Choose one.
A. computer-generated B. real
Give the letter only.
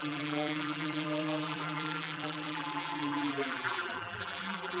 A